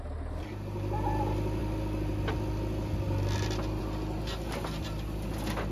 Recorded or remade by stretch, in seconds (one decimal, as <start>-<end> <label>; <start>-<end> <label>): 0.0-5.7 recorded